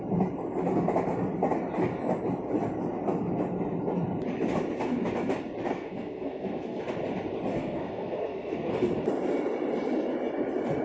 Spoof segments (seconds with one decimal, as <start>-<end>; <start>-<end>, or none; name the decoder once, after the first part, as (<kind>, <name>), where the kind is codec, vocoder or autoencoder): 5.7-6.8 (codec, SNAC); 7.5-8.7